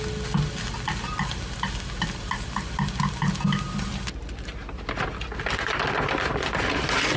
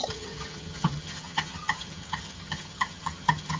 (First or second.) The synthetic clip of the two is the second